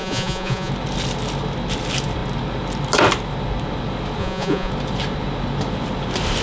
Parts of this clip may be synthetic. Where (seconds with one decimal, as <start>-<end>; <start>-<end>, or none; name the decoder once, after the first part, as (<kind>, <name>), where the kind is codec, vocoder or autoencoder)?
0.0-0.7 (vocoder, Vocos); 4.2-4.7